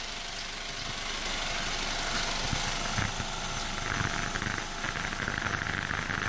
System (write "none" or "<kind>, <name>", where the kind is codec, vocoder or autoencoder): none